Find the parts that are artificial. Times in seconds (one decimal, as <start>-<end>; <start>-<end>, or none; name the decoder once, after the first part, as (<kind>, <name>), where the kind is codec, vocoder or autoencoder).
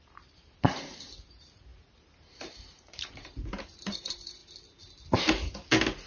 0.0-4.4 (vocoder, BigVGAN v2)